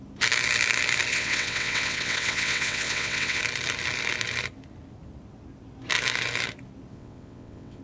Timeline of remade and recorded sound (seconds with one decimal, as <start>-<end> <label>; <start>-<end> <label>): 0.0-1.1 recorded; 1.1-3.4 remade; 3.4-6.9 recorded; 6.9-7.8 remade